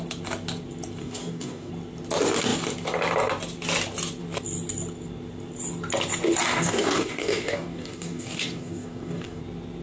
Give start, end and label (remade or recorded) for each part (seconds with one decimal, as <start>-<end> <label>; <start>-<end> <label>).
0.0-1.0 recorded; 1.0-1.7 remade; 1.7-6.5 recorded; 6.5-9.4 remade; 9.4-9.8 recorded